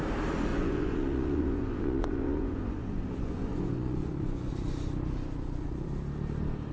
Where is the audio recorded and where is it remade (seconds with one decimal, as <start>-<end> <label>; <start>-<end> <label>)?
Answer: 0.0-0.5 recorded; 0.5-4.5 remade; 4.5-6.7 recorded